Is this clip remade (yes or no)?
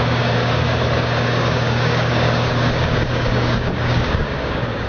yes